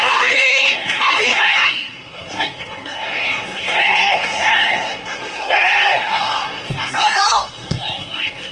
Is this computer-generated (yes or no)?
yes